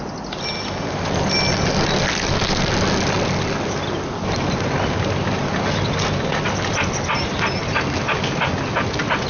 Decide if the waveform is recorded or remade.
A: recorded